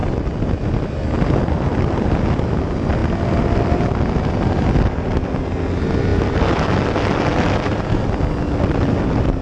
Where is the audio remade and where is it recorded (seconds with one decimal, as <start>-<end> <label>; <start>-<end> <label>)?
0.0-9.4 recorded